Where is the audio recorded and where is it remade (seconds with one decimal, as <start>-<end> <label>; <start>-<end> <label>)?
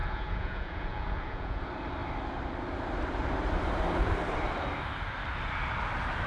0.0-1.6 remade; 1.6-6.3 recorded